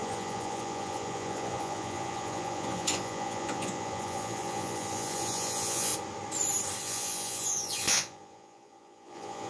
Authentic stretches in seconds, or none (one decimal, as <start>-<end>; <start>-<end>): 5.9-6.8